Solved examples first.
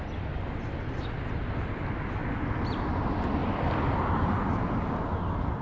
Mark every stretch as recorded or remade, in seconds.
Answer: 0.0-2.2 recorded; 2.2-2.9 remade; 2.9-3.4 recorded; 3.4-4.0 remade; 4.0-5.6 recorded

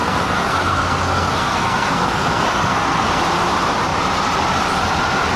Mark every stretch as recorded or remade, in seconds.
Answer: 0.0-3.2 remade; 3.2-5.4 recorded

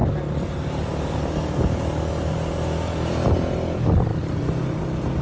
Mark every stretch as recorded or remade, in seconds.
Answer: 0.0-5.2 recorded

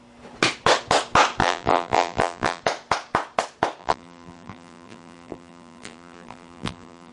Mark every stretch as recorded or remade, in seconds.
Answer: 0.0-1.4 recorded; 1.4-2.6 remade; 2.6-3.8 recorded; 3.8-7.1 remade

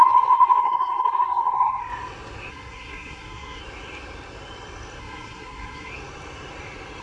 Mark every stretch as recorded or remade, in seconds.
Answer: 0.0-1.8 remade; 1.8-2.5 recorded; 2.5-3.6 remade; 3.6-5.0 recorded; 5.0-5.9 remade; 5.9-7.0 recorded